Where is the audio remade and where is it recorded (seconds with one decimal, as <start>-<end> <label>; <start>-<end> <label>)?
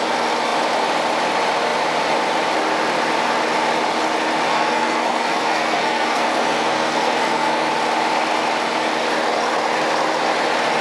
0.0-4.5 recorded; 4.5-7.7 remade; 7.7-10.8 recorded